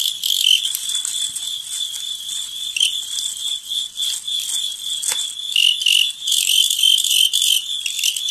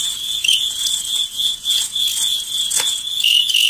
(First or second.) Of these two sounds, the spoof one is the second